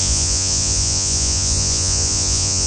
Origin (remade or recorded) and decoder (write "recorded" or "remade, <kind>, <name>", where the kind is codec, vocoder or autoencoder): remade, vocoder, Vocos